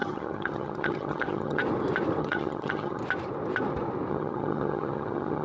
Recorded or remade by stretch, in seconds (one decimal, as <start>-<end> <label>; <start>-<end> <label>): 0.0-1.6 remade; 1.6-2.2 recorded; 2.2-3.0 remade; 3.0-4.1 recorded; 4.1-5.4 remade